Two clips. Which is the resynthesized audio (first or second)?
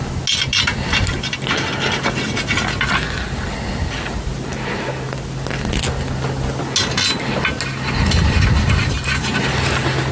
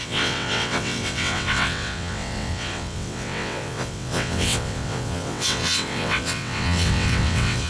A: second